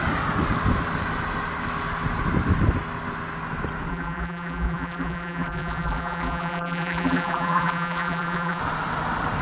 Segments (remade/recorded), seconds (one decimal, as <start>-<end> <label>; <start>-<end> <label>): 0.0-3.9 recorded; 3.9-8.6 remade; 8.6-9.4 recorded